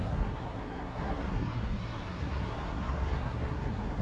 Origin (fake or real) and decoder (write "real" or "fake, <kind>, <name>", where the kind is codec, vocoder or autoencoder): fake, codec, SNAC